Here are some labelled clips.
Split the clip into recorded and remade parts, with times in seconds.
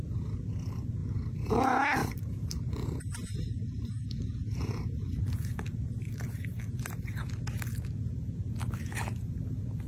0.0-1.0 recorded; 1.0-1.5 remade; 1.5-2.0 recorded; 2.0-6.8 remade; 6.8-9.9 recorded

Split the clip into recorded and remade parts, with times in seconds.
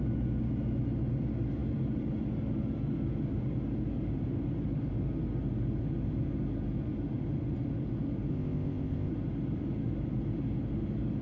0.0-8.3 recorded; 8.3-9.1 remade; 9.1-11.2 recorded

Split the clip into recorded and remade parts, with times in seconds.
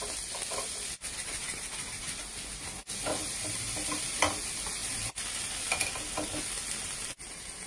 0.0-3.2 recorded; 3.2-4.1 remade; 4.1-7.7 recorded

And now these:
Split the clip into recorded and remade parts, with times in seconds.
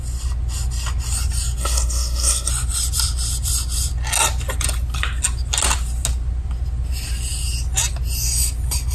0.0-1.6 recorded; 1.6-2.5 remade; 2.5-8.9 recorded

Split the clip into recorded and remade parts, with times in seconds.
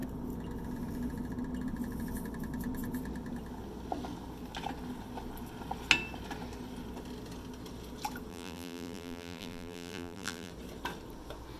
0.0-8.3 recorded; 8.3-10.5 remade; 10.5-11.6 recorded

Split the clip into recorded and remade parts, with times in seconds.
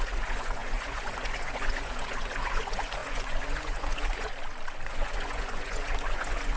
0.0-4.3 remade; 4.3-4.9 recorded; 4.9-6.6 remade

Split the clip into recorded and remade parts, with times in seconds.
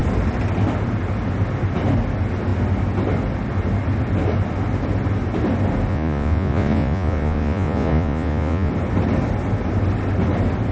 0.0-5.9 recorded; 5.9-8.7 remade; 8.7-10.7 recorded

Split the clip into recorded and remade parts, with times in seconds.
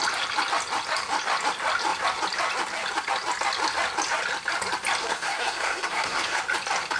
0.0-5.0 recorded; 5.0-6.4 remade; 6.4-7.0 recorded